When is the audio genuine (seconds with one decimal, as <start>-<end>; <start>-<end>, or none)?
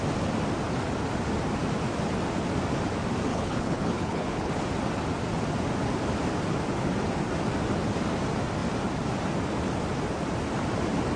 0.0-3.3; 4.5-11.2